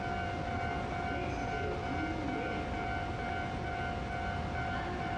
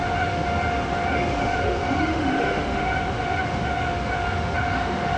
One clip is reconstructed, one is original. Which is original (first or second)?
first